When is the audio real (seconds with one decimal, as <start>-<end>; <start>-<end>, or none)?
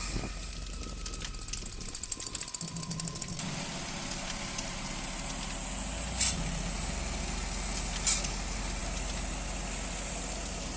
0.0-10.8